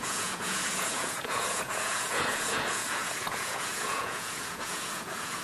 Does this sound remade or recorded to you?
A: remade